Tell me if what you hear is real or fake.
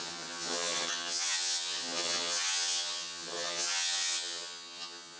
fake